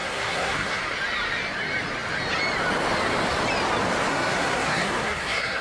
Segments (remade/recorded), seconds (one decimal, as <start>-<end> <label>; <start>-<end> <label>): 0.0-0.8 remade; 0.8-4.1 recorded; 4.1-5.6 remade